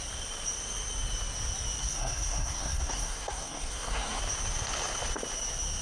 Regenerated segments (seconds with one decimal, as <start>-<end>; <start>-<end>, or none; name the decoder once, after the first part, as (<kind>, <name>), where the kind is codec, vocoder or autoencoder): 1.8-4.2 (codec, SNAC)